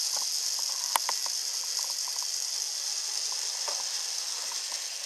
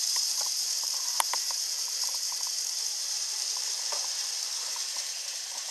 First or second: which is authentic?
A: first